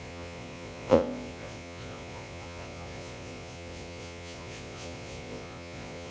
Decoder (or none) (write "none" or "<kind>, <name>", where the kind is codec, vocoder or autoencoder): vocoder, Vocos